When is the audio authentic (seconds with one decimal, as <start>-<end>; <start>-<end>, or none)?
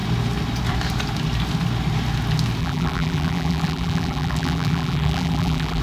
0.0-2.6